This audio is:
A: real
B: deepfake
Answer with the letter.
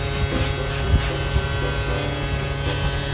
A